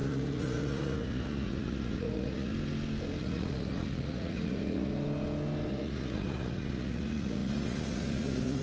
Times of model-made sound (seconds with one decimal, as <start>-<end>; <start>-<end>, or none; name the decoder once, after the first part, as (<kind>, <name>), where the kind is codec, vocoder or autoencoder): 0.0-2.5 (vocoder, Vocos); 3.2-4.9; 5.7-8.6